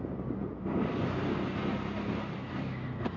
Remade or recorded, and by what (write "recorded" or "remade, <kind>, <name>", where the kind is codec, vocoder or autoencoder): recorded